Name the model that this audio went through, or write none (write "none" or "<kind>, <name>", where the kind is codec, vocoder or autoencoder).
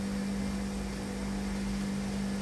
none